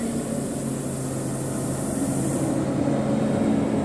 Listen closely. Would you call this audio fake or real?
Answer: real